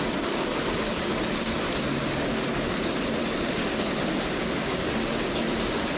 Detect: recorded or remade recorded